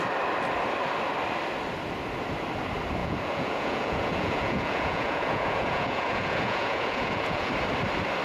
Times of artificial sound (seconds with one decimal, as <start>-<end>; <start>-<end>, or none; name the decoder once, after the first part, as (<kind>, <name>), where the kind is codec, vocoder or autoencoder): 3.0-7.5 (vocoder, Vocos)